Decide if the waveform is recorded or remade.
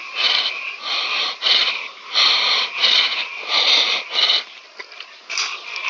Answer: recorded